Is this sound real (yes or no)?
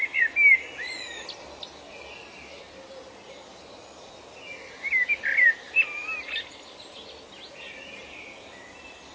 yes